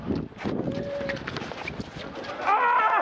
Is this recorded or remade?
recorded